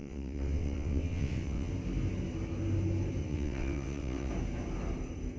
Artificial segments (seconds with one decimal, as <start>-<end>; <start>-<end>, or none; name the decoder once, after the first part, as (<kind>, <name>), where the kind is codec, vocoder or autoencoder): 0.0-1.7 (vocoder, WaveNeXt); 3.2-4.3